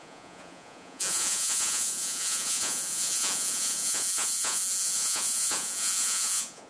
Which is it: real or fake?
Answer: fake